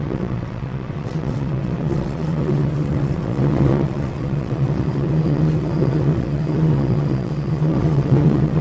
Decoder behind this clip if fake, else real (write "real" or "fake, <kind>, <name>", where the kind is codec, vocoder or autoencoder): fake, vocoder, WaveNeXt